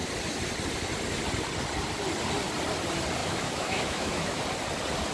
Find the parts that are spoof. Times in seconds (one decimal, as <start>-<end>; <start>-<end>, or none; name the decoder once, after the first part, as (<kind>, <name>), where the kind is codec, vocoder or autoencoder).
3.2-4.4 (autoencoder, DAC-VAE)